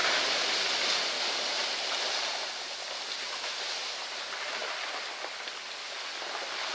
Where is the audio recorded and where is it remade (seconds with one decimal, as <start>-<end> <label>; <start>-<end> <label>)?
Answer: 0.0-6.7 recorded

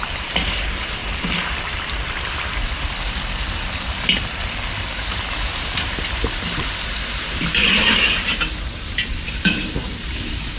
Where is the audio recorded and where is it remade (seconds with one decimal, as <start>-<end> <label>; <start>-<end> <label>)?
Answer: 0.0-1.0 remade; 1.0-5.6 recorded; 5.6-10.6 remade